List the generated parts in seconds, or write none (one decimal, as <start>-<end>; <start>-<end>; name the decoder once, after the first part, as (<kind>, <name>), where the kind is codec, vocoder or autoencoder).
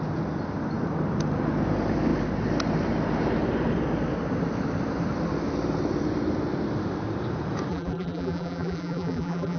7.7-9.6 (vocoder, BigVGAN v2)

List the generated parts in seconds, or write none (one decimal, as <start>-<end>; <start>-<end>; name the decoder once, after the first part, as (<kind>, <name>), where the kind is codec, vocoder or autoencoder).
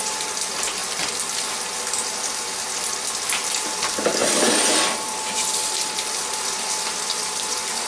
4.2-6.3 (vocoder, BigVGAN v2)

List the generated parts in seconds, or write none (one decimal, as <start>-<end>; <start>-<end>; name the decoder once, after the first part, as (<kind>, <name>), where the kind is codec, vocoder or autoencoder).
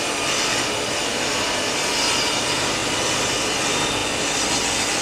2.8-3.6 (vocoder, BigVGAN v2); 4.0-4.5